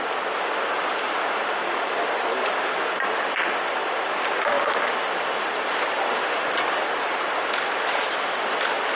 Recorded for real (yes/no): yes